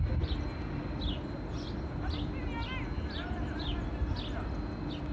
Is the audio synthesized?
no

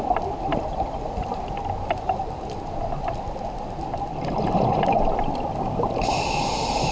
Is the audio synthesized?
no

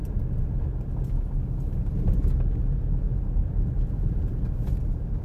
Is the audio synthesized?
no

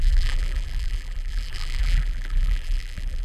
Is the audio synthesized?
yes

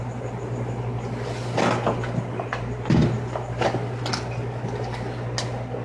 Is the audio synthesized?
no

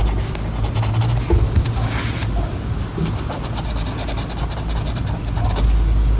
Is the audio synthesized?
no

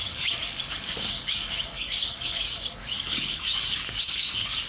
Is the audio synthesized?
yes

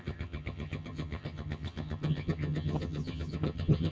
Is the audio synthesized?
yes